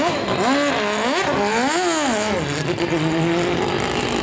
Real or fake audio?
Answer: real